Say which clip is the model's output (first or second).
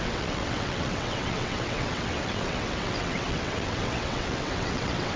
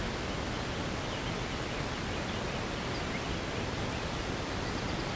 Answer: first